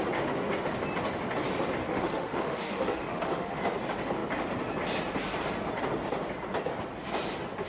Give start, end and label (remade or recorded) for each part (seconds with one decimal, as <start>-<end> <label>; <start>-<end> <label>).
0.0-1.8 recorded; 1.8-3.6 remade; 3.6-7.7 recorded